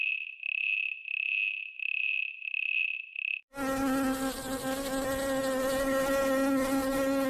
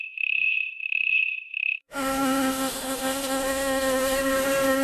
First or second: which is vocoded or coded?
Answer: second